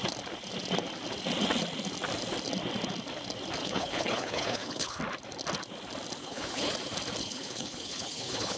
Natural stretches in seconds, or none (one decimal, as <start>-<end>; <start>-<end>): 0.0-3.6; 5.0-6.2; 6.7-7.2